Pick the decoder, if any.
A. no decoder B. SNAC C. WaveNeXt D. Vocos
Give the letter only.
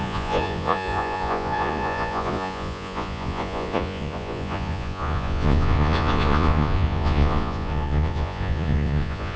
D